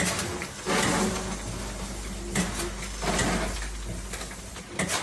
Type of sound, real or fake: real